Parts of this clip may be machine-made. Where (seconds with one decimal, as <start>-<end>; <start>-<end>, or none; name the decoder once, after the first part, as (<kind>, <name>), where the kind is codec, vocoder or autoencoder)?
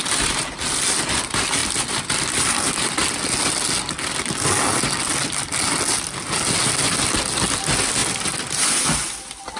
1.6-2.6 (vocoder, BigVGAN v2)